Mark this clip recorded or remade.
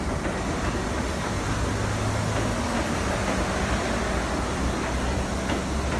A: recorded